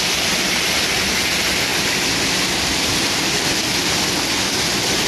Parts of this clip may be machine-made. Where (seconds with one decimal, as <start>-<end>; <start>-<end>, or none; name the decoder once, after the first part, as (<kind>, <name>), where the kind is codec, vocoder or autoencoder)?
none